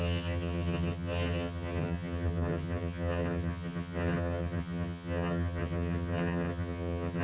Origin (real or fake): fake